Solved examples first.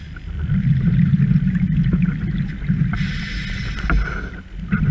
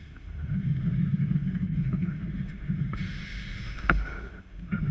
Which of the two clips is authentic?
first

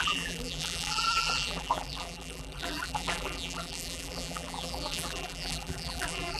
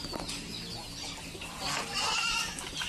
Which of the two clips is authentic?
second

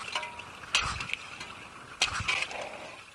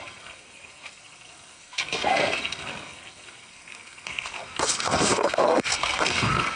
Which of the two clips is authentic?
first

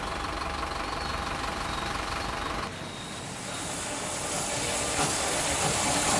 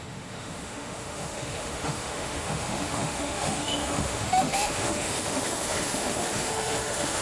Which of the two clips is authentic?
first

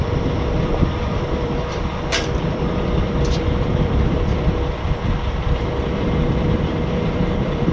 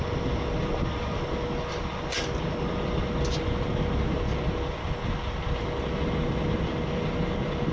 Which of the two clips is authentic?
second